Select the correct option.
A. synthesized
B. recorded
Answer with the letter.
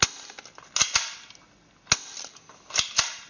B